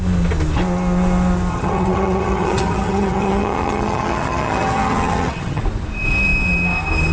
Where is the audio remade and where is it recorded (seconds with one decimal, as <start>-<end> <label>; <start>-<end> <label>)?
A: 0.0-1.5 recorded; 1.5-5.6 remade; 5.6-7.1 recorded